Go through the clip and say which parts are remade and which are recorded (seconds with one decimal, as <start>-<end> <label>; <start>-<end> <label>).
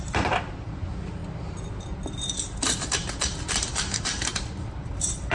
0.0-1.2 remade; 1.2-3.5 recorded; 3.5-5.3 remade